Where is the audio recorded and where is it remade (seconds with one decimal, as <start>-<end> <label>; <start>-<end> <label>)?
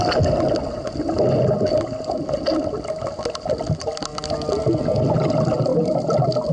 0.0-6.5 recorded